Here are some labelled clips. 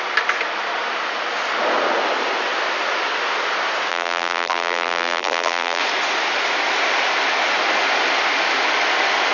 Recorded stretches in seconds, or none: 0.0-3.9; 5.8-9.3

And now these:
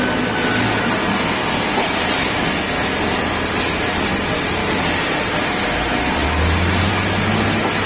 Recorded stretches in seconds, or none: 0.0-1.4; 2.5-7.9

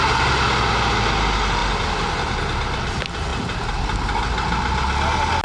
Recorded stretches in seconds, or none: 0.0-5.4

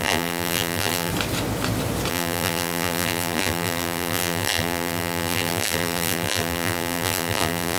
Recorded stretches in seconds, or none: 1.1-2.1

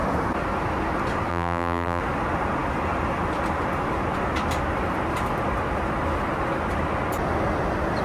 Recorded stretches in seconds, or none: 0.0-1.3; 2.0-8.0

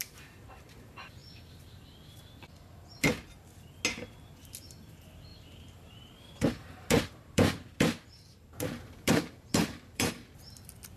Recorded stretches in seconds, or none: 0.0-5.3; 10.1-11.0

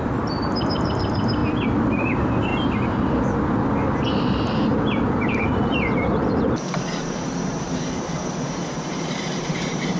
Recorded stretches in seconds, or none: 1.4-1.9; 2.5-4.0